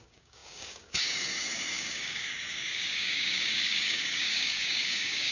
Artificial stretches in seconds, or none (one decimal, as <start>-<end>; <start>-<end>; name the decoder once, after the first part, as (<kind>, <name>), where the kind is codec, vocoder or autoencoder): 0.0-5.3 (codec, DAC)